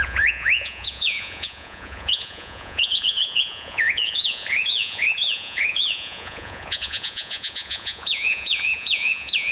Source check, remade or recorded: remade